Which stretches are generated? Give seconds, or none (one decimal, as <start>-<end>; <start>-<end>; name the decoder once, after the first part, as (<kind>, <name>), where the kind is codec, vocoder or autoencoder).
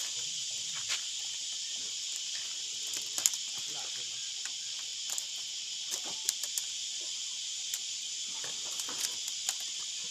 none